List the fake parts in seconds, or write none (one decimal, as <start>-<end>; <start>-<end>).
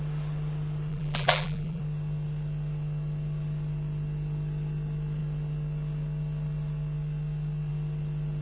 0.9-1.8